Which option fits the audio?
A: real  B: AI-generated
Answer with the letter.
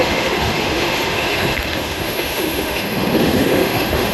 B